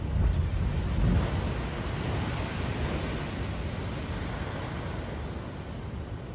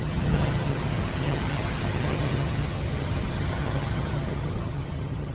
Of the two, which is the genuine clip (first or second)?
first